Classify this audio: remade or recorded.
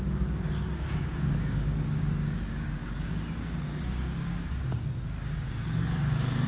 remade